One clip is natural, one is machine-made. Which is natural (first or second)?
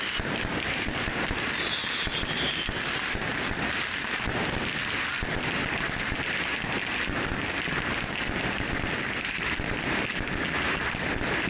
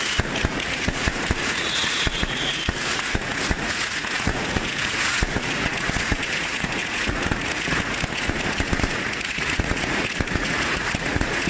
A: first